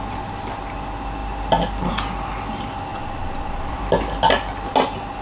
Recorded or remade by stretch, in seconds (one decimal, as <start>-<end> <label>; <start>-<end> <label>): 0.0-2.9 recorded; 2.9-3.8 remade; 3.8-5.2 recorded